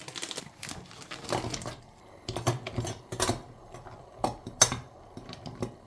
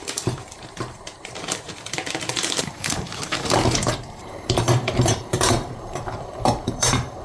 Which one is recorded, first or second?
first